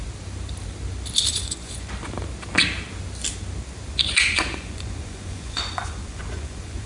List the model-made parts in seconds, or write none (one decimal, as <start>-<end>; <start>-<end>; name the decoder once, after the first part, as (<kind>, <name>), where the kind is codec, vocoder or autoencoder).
1.3-1.9 (vocoder, Vocos); 3.9-6.9